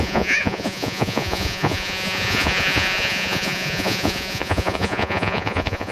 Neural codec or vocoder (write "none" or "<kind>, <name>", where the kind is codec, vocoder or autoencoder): vocoder, Vocos